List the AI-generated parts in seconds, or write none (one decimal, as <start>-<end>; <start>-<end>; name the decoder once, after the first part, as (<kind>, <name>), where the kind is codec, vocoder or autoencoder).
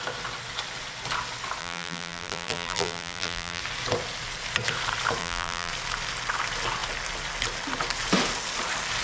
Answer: 1.6-3.6 (vocoder, BigVGAN v2); 5.2-5.7